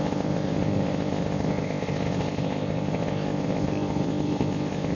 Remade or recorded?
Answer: remade